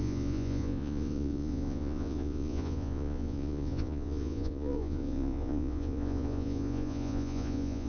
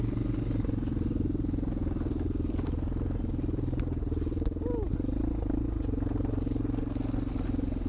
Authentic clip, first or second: second